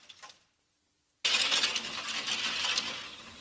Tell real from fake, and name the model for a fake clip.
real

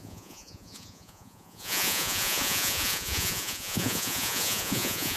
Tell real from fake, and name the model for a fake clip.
fake, vocoder, Vocos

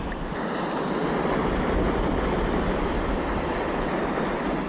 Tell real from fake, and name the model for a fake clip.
real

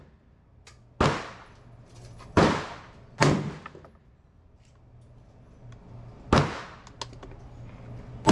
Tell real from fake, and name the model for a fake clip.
real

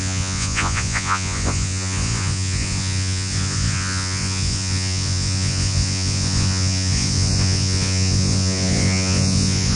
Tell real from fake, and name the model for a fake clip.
fake, vocoder, Vocos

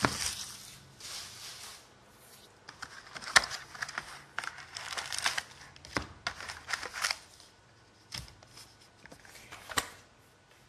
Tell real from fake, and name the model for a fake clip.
real